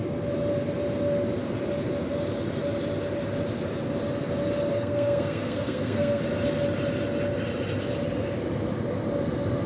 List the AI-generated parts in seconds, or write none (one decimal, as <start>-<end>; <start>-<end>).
4.7-6.2